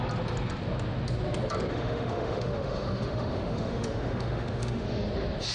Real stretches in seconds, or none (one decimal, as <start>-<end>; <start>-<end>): 0.0-1.7; 5.0-5.5